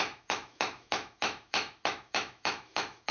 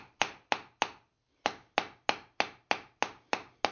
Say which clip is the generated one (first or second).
first